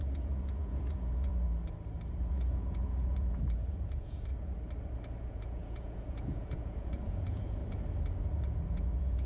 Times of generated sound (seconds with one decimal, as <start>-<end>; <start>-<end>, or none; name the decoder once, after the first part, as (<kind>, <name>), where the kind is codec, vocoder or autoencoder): 0.0-1.3 (vocoder, Vocos); 2.3-4.3; 5.2-7.6; 8.4-9.3